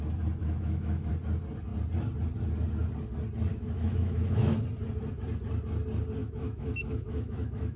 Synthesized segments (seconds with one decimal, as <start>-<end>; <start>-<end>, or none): 0.4-1.1; 3.5-4.6; 6.2-7.8